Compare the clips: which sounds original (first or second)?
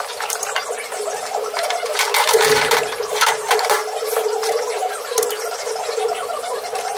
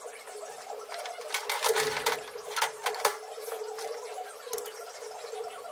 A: second